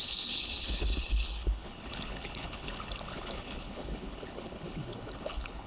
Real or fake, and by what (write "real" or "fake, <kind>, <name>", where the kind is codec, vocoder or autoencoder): fake, codec, HILCodec